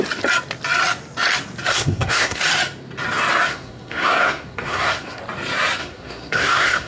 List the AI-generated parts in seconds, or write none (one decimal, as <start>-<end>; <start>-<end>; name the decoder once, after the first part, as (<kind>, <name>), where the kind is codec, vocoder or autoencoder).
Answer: 1.7-2.4 (codec, SNAC); 3.5-5.2; 5.8-6.9